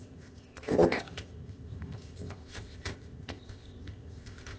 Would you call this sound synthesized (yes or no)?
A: yes